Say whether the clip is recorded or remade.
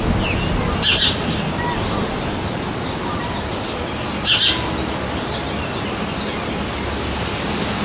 recorded